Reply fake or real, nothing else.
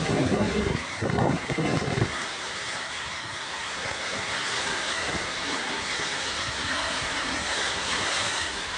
fake